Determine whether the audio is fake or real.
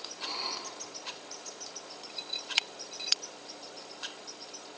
fake